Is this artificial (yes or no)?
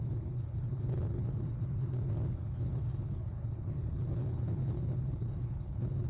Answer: yes